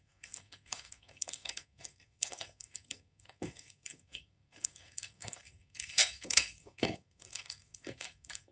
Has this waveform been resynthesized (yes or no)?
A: yes